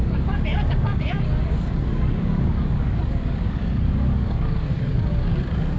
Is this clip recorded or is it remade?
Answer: remade